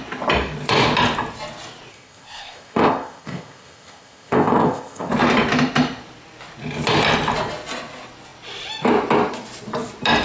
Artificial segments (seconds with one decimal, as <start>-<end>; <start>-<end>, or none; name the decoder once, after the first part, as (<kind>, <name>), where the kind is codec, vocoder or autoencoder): 1.9-5.1 (codec, ZipCodec)